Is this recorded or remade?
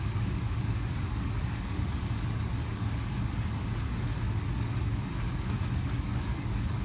remade